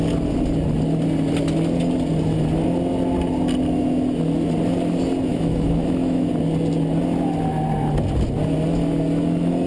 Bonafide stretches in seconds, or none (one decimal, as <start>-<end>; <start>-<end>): 0.0-5.3; 6.3-9.7